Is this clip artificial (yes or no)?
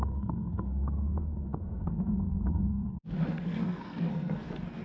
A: yes